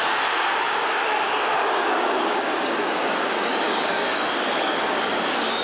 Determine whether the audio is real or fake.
fake